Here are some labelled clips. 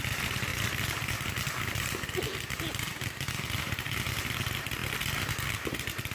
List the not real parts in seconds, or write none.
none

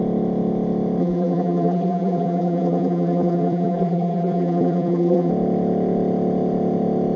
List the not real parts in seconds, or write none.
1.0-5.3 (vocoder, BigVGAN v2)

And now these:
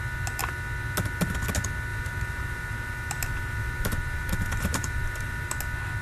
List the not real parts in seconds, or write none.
1.9-5.5 (vocoder, BigVGAN v2)

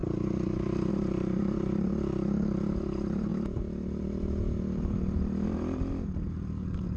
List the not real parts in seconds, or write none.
0.0-1.9 (vocoder, BigVGAN v2); 2.6-7.0

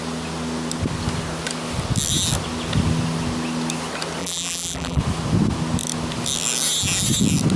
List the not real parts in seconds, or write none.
4.2-5.0 (vocoder, BigVGAN v2)

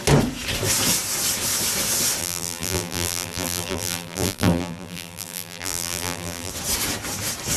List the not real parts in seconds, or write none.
2.2-6.5 (vocoder, BigVGAN v2)